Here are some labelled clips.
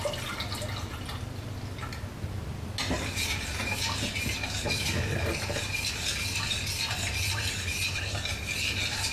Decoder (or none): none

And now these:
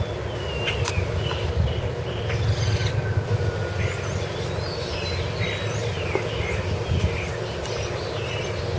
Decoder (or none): none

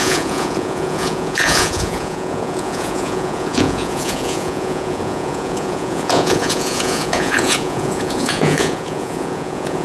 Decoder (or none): vocoder, Vocos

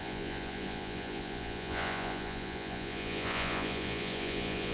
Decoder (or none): vocoder, Vocos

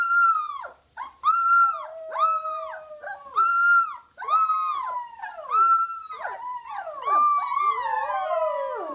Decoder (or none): none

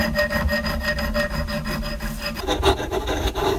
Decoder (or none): none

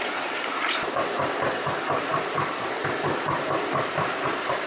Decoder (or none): vocoder, BigVGAN v2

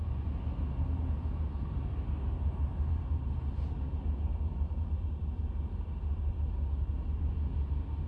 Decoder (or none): none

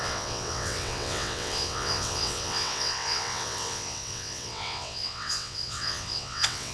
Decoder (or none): vocoder, WaveNeXt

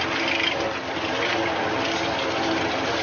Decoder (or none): vocoder, BigVGAN v2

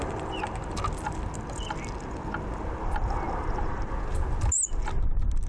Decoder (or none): none